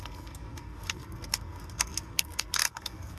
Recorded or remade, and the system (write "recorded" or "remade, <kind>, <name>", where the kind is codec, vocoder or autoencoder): remade, codec, SNAC